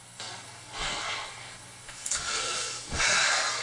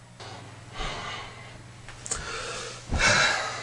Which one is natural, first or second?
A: second